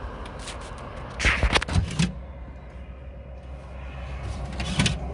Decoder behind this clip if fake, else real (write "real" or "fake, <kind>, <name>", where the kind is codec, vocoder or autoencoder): real